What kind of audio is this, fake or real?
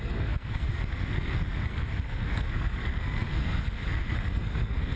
fake